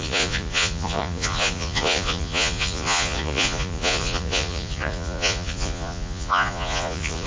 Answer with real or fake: fake